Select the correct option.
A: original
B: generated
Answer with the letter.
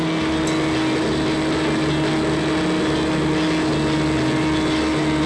A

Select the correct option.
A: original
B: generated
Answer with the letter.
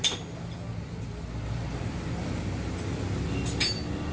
A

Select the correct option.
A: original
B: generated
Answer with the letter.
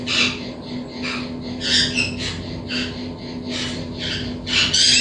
A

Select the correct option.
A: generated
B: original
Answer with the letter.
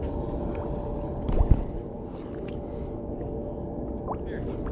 B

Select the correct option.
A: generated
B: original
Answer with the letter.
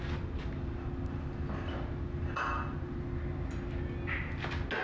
B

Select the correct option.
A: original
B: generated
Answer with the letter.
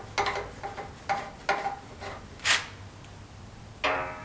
A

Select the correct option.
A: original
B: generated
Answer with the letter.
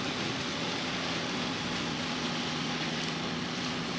A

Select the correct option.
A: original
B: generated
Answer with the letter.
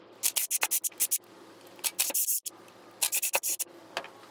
A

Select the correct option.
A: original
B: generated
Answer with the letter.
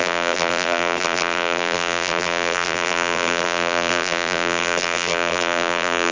B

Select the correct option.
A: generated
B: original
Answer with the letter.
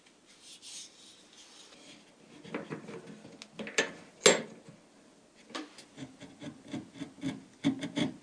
B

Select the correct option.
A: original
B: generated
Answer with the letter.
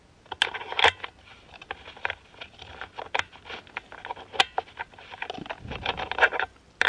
A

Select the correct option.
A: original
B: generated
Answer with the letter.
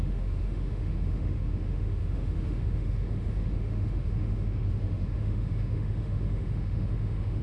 B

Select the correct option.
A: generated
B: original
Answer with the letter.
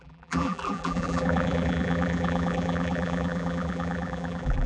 A